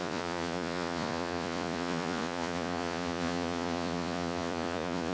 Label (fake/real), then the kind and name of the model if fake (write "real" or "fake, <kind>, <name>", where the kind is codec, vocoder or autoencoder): fake, vocoder, Vocos